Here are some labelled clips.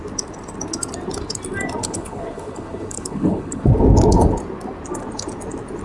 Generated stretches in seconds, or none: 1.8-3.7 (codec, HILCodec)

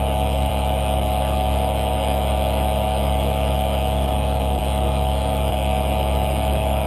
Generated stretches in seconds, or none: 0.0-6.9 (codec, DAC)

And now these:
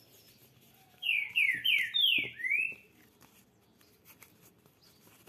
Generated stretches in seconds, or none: 0.0-5.3 (vocoder, BigVGAN v2)